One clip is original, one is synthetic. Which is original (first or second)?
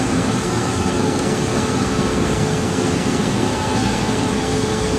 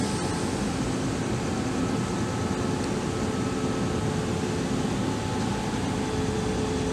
second